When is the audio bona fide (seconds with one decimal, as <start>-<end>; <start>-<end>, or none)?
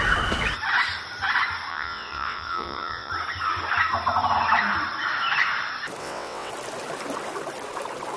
0.0-1.7; 3.1-6.0; 6.5-8.2